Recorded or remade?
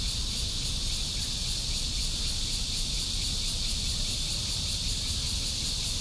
recorded